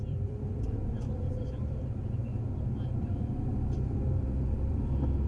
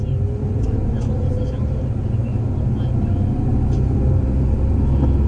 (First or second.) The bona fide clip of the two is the second